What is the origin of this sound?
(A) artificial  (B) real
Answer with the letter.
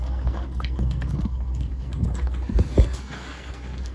A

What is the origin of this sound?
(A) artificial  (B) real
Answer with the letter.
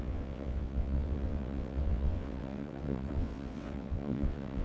A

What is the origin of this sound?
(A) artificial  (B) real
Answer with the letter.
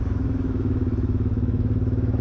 A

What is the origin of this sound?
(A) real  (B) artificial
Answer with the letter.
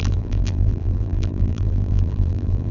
B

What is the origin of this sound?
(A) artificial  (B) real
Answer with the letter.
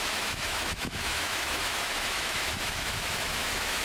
A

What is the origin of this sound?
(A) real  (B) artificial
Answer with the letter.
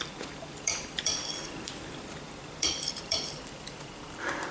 B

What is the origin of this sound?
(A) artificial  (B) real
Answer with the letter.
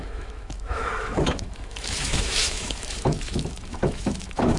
A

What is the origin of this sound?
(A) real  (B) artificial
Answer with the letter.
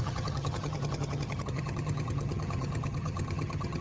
B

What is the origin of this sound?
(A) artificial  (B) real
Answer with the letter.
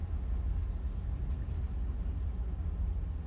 B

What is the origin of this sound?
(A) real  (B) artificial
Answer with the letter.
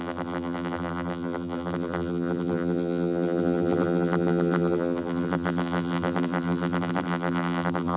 B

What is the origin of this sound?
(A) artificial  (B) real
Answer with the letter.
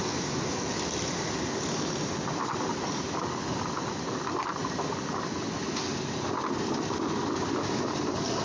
B